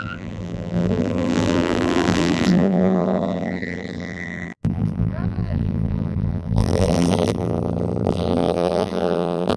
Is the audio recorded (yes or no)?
no